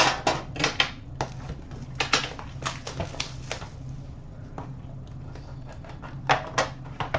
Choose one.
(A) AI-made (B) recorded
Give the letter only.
B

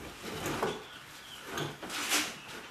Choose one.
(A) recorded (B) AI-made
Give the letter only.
A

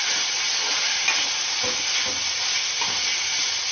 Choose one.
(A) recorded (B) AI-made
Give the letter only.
A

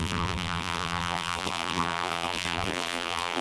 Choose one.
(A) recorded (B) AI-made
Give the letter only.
B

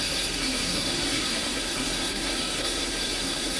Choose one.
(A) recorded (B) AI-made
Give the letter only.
B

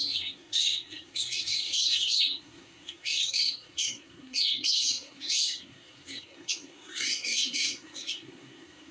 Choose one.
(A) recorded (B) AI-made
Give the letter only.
B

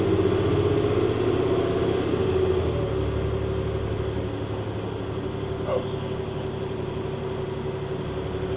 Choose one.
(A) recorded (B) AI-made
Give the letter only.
A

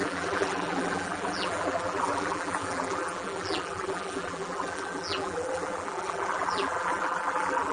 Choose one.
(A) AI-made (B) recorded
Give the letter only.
A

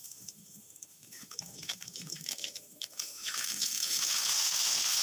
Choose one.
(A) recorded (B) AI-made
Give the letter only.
B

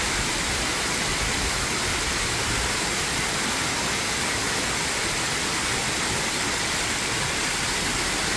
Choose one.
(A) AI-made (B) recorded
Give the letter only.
B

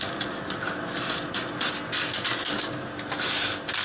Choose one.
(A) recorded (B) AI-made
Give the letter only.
A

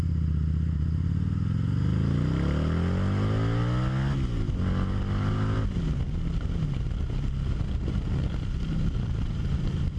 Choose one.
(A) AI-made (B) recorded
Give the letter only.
B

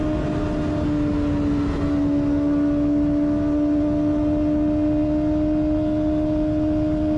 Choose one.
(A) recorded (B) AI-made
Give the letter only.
A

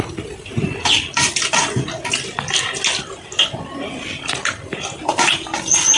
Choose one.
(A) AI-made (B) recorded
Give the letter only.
B